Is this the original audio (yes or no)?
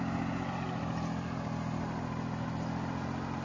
yes